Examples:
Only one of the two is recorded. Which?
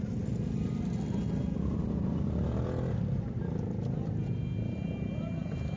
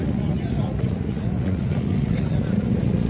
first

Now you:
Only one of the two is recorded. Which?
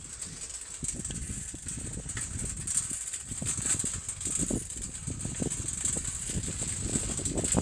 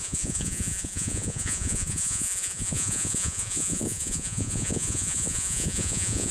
first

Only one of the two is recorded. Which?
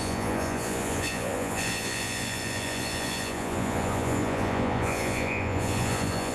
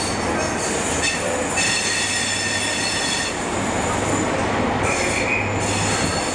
second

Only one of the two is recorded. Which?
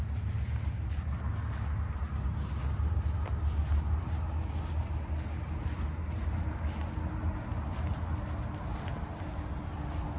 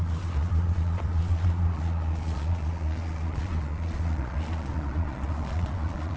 first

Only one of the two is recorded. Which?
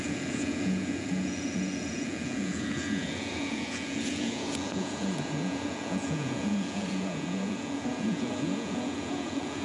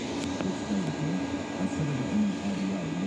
second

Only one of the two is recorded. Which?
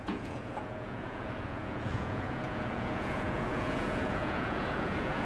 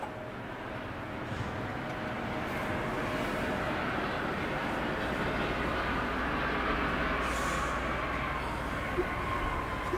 second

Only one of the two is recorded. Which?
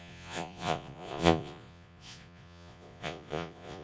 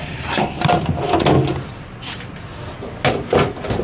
second